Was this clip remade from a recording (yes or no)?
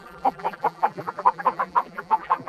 yes